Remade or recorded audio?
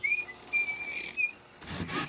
recorded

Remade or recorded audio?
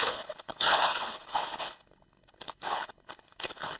remade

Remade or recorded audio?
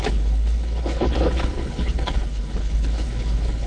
remade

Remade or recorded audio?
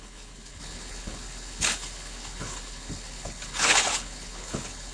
remade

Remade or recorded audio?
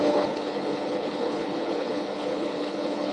remade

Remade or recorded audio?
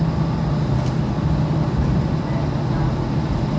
recorded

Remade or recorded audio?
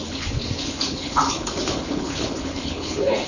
remade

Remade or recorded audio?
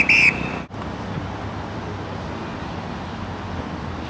recorded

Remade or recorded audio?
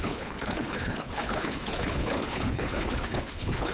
remade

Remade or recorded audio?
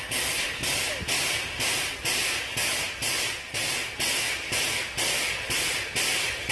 recorded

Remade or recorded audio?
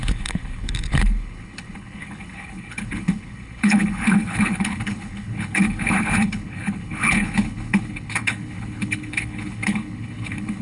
remade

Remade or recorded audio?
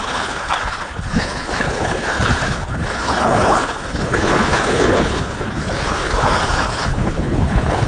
remade